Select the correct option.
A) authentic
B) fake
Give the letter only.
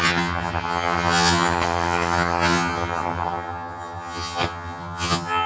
B